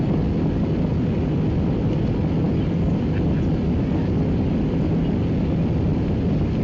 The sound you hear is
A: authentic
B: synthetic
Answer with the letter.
A